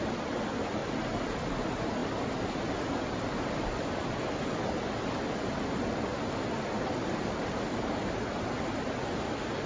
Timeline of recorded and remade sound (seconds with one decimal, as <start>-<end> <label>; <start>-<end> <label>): 0.0-0.8 recorded; 0.8-1.6 remade; 1.6-9.7 recorded